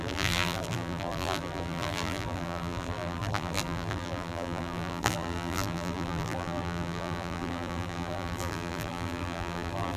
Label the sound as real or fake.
fake